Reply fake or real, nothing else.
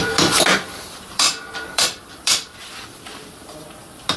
fake